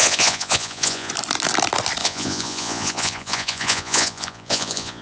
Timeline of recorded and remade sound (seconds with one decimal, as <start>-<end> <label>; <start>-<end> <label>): 0.0-1.1 remade; 1.1-2.0 recorded; 2.0-5.0 remade